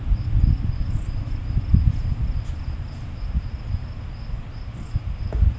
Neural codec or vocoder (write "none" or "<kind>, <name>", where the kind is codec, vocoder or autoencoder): none